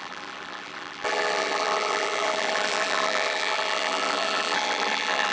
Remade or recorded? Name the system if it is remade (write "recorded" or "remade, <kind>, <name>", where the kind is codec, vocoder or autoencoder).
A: remade, vocoder, BigVGAN v2